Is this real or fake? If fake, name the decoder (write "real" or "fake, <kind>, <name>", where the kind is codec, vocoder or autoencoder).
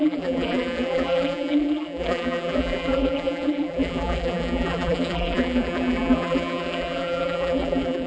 fake, vocoder, BigVGAN v2